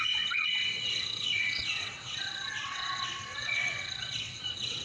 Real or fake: fake